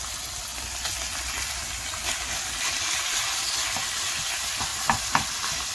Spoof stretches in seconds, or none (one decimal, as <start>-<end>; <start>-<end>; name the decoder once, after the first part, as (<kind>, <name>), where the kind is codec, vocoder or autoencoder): none